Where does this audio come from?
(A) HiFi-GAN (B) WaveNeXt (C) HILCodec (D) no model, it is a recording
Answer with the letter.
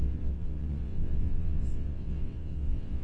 B